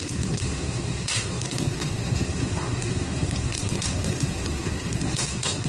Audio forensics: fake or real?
fake